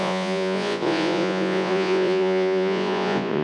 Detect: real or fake fake